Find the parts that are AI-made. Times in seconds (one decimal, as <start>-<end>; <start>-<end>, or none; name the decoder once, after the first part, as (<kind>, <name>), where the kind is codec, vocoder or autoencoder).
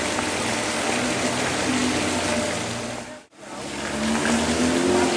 none